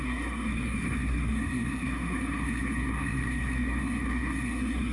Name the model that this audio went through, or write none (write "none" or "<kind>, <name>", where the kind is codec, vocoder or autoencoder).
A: codec, SNAC